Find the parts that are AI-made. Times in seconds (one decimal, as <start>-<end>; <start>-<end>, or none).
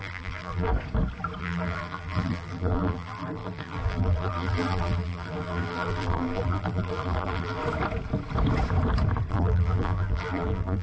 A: 0.0-0.7; 1.4-7.6; 9.3-10.8